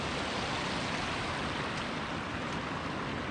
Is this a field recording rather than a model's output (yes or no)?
yes